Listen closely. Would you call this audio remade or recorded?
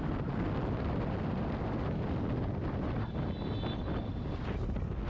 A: recorded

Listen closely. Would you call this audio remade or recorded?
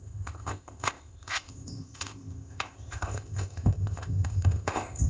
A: remade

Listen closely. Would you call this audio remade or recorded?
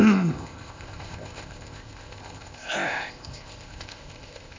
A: remade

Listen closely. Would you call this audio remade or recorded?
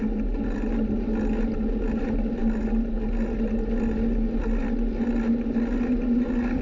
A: recorded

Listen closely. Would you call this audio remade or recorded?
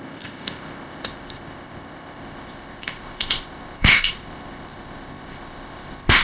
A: remade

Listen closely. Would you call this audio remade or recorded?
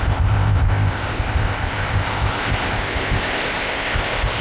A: remade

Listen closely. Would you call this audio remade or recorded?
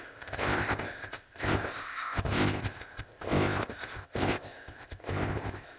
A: remade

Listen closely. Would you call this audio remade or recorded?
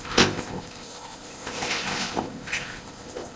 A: remade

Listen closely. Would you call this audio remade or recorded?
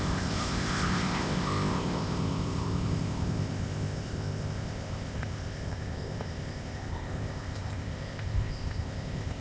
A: remade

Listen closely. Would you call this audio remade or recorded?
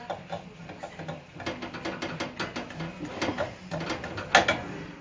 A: recorded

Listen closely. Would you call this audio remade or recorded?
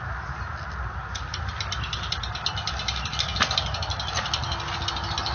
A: recorded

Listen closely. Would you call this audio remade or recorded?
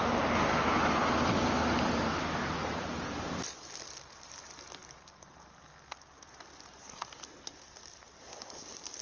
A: recorded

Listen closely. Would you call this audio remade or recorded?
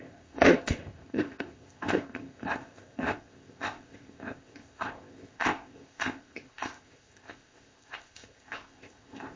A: remade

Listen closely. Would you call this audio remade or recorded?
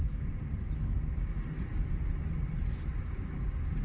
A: recorded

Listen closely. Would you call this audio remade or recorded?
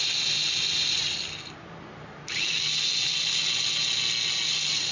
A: recorded